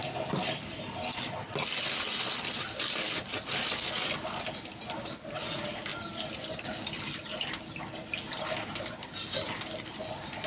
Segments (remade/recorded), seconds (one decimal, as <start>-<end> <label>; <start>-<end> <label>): 0.0-10.5 recorded